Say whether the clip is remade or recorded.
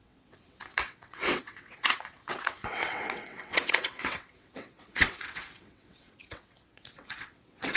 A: remade